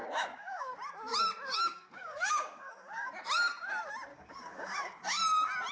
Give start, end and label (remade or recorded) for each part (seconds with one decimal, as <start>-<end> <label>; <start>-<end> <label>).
0.0-0.7 remade; 0.7-1.5 recorded; 1.5-3.1 remade; 3.1-4.1 recorded; 4.1-5.2 remade; 5.2-5.7 recorded